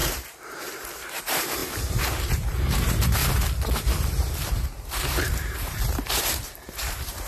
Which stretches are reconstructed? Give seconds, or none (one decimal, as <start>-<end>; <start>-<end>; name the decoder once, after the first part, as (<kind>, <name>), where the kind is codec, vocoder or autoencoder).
0.0-3.2 (vocoder, BigVGAN v2); 4.0-7.3